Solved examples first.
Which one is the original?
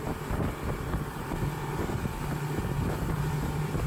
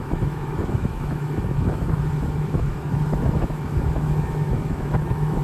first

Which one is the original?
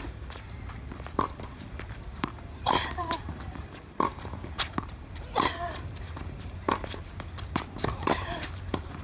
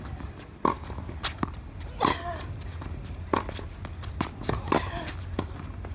second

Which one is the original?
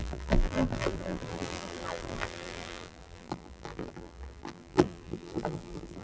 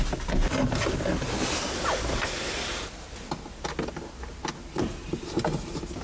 second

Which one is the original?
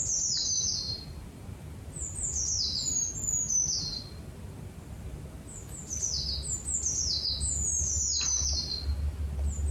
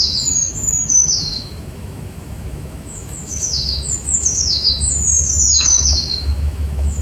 first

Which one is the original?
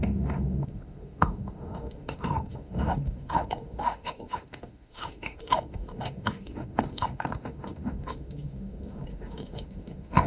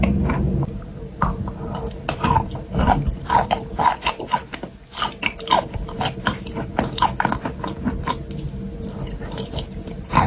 second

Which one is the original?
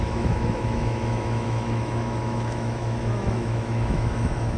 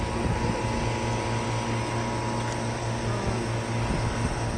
second